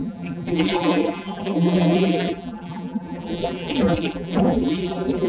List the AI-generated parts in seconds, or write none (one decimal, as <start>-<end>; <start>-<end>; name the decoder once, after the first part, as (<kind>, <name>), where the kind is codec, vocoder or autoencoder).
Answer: 0.0-5.3 (vocoder, BigVGAN v2)